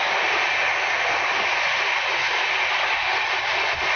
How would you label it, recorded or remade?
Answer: recorded